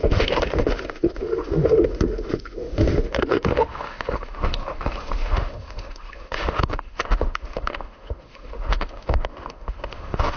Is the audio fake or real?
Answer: fake